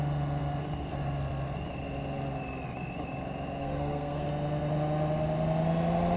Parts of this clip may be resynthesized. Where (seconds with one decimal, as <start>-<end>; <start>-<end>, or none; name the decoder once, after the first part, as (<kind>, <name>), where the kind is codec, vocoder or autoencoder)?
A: 3.6-4.3 (codec, SNAC)